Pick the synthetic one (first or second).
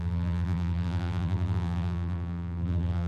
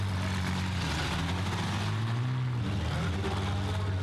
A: first